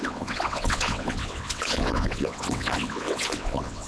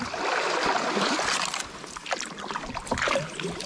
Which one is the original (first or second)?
second